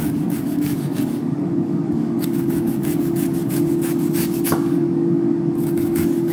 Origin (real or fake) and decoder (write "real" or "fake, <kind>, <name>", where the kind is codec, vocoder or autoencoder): fake, codec, DAC